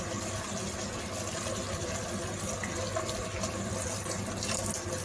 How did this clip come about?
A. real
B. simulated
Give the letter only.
A